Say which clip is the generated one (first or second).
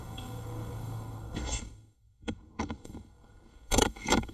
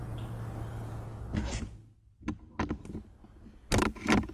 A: first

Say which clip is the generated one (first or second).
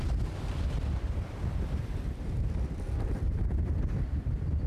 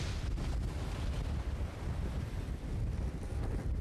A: first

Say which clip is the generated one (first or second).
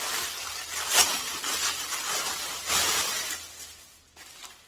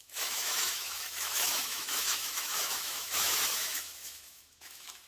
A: second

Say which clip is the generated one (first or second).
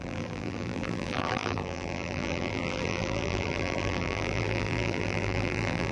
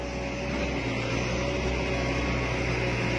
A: first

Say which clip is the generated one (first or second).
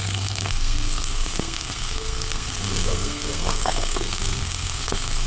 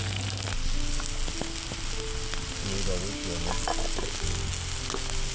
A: first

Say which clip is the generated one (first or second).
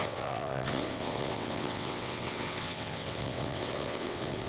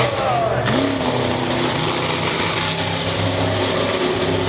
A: first